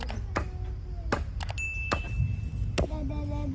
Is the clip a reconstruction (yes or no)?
no